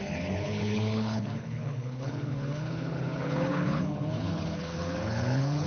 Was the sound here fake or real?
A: fake